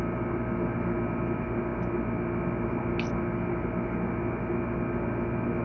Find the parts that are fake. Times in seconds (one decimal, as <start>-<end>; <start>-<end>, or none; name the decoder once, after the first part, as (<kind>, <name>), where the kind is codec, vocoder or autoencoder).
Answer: none

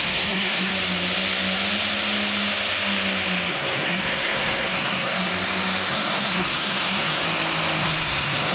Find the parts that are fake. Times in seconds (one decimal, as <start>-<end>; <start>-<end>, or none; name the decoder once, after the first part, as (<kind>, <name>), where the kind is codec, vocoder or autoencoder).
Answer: 0.0-0.7 (codec, SNAC); 3.5-5.3; 5.9-7.2; 7.8-8.5

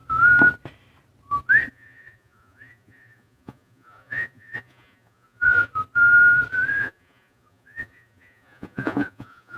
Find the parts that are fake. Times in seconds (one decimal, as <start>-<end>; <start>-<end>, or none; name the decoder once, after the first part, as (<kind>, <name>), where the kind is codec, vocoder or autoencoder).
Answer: 1.7-5.7 (vocoder, Vocos); 6.8-9.6

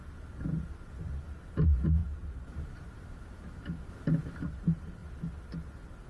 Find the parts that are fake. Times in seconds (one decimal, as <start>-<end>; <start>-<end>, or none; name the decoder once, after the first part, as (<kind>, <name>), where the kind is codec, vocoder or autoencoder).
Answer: 1.5-5.0 (vocoder, BigVGAN v2)

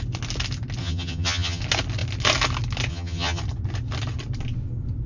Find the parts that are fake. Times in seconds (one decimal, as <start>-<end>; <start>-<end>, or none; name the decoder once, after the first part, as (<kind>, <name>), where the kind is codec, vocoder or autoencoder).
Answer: 0.8-1.6 (vocoder, HiFi-GAN); 2.9-3.4

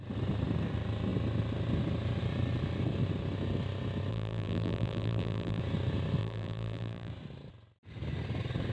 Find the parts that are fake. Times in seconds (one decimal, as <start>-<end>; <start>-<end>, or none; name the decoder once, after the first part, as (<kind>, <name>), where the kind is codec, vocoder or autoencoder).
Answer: 4.1-5.6 (vocoder, BigVGAN v2); 6.2-7.1